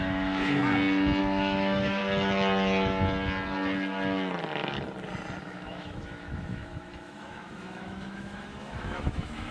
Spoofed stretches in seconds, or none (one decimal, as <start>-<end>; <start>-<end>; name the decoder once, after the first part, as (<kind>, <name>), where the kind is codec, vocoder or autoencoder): 0.0-0.6 (autoencoder, DAC-VAE); 1.2-2.0; 5.4-9.5